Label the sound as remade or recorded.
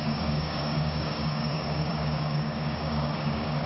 remade